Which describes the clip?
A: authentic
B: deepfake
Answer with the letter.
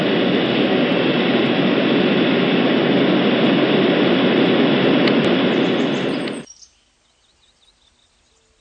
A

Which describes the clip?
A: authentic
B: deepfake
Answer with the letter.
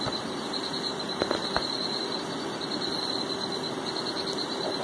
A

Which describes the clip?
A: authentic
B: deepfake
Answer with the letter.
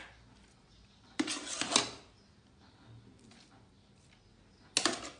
A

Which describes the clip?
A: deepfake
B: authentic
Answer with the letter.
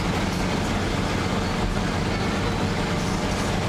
B